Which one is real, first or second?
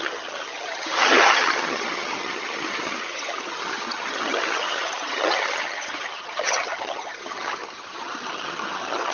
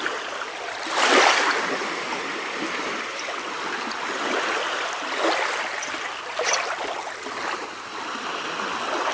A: second